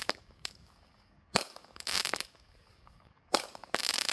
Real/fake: fake